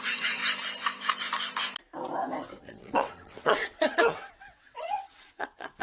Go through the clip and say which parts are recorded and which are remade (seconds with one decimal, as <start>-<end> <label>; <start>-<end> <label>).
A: 0.0-0.4 remade; 0.4-2.6 recorded; 2.6-5.8 remade